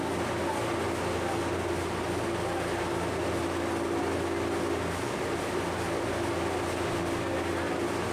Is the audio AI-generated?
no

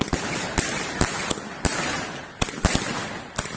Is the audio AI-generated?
no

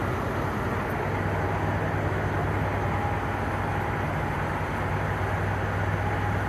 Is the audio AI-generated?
no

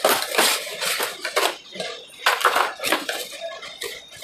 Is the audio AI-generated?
no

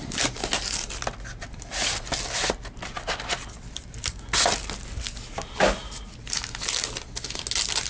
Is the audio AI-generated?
no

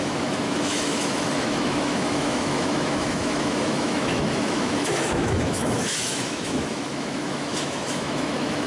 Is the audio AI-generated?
yes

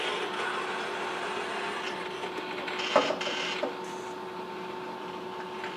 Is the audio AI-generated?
no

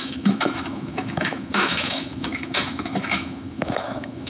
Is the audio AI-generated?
yes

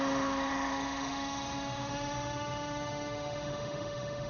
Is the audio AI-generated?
yes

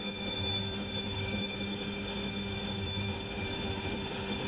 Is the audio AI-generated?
yes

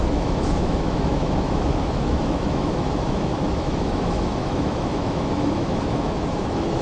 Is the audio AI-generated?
yes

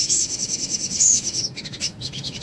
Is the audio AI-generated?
yes